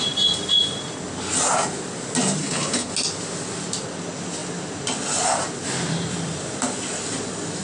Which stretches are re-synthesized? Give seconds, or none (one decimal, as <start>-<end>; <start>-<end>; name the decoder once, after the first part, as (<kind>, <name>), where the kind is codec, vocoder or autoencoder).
2.4-2.9 (codec, HILCodec)